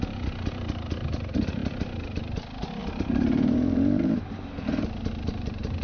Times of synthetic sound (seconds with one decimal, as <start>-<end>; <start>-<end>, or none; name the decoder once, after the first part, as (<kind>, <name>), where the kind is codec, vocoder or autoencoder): 2.8-5.8 (vocoder, BigVGAN v2)